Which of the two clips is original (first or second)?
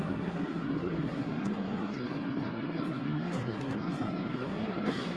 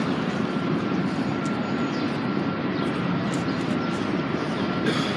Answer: second